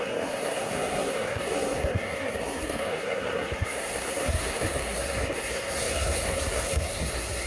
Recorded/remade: remade